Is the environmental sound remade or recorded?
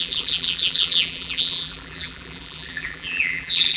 remade